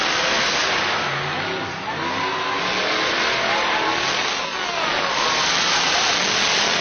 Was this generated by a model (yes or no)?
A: no